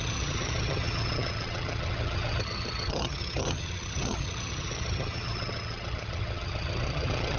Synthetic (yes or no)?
yes